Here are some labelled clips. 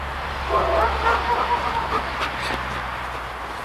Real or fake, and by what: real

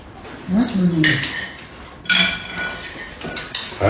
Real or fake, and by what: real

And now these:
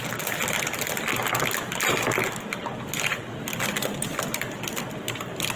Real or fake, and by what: real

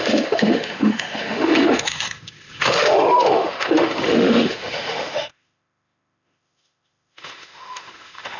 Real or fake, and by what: fake, autoencoder, DAC-VAE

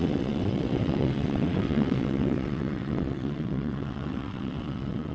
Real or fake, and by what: fake, vocoder, WaveNeXt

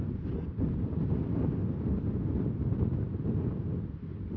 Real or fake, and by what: real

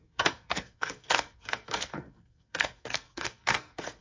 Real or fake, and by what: fake, codec, SNAC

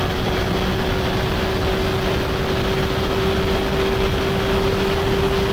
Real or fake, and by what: real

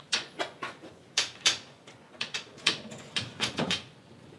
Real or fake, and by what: fake, vocoder, Vocos